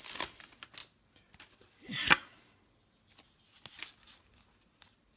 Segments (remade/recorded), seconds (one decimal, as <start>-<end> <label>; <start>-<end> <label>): 0.0-5.2 recorded